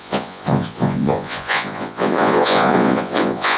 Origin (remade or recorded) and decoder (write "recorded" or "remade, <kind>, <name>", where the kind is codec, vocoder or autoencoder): remade, vocoder, Vocos